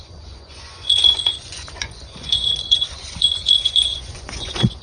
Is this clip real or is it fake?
fake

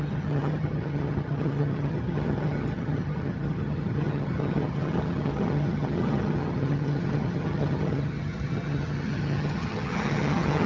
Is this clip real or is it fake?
fake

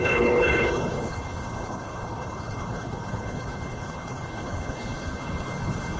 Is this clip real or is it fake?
fake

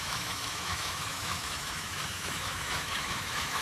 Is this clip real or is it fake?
fake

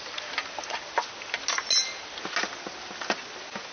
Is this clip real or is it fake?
real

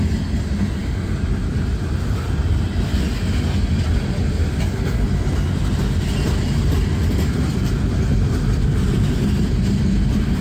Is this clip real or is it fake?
real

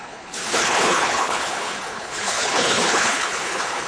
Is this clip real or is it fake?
fake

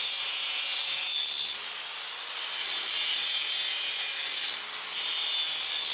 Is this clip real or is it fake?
real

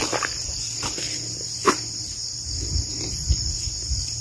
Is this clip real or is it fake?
real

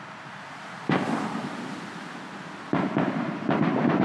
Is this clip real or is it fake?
real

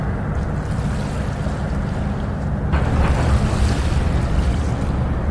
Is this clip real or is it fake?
real